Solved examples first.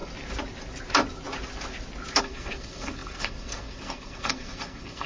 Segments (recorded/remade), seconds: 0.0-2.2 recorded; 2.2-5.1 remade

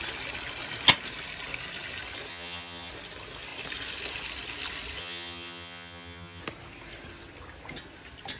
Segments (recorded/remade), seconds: 0.0-2.3 recorded; 2.3-2.9 remade; 2.9-5.0 recorded; 5.0-6.4 remade; 6.4-8.4 recorded

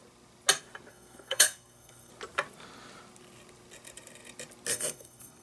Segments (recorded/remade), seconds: 0.0-0.9 recorded; 0.9-2.1 remade; 2.1-4.7 recorded; 4.7-5.4 remade

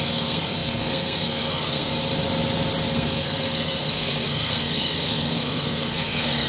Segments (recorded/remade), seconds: 0.0-1.9 remade; 1.9-2.9 recorded; 2.9-6.5 remade

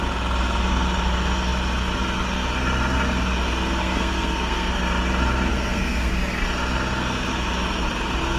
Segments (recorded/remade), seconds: 0.0-3.8 recorded; 3.8-4.7 remade; 4.7-5.5 recorded; 5.5-6.1 remade; 6.1-8.4 recorded

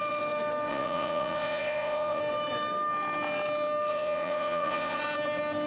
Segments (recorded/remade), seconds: 0.0-0.7 recorded; 0.7-2.2 remade; 2.2-3.9 recorded; 3.9-5.0 remade; 5.0-5.7 recorded